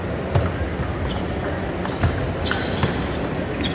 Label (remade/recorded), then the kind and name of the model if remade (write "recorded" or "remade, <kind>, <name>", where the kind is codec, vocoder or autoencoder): recorded